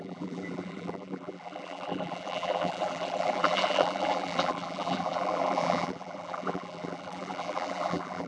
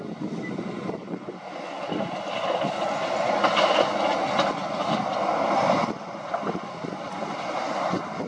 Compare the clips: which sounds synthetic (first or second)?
first